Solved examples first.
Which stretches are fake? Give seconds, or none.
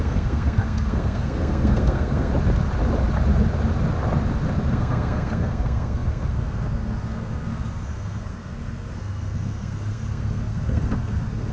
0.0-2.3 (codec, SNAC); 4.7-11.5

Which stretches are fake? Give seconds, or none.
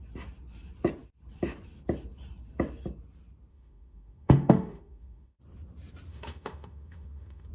3.5-5.4 (autoencoder, DAC-VAE); 6.1-7.5